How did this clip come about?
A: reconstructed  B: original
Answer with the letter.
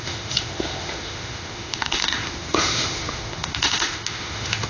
A